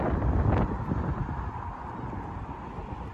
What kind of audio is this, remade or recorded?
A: recorded